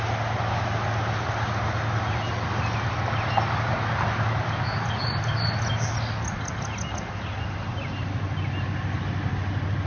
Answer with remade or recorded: recorded